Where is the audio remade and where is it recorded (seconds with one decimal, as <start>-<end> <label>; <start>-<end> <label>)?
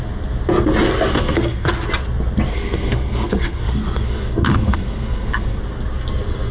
0.0-1.1 recorded; 1.1-1.7 remade; 1.7-2.5 recorded; 2.5-5.6 remade; 5.6-6.5 recorded